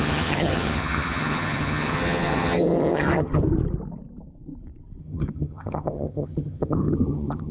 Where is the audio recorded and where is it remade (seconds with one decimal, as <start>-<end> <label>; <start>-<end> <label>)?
0.0-3.4 remade; 3.4-5.0 recorded; 5.0-7.5 remade